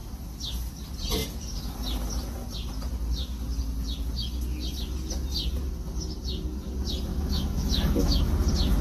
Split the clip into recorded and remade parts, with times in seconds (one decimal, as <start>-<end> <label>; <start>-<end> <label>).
0.0-7.1 recorded; 7.1-8.3 remade; 8.3-8.8 recorded